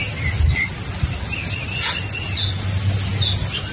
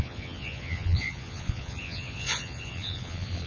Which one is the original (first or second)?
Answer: first